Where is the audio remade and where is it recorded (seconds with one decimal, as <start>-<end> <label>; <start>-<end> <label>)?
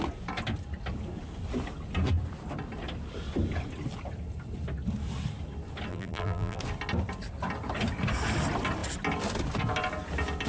0.0-5.9 recorded; 5.9-6.6 remade; 6.6-10.5 recorded